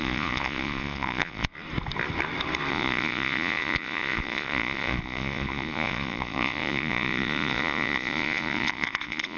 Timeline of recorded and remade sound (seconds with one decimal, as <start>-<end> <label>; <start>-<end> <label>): 0.0-1.5 remade; 1.5-2.7 recorded; 2.7-9.4 remade